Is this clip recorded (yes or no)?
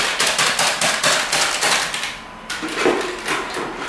no